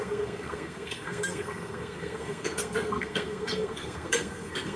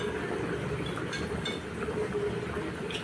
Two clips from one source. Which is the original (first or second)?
second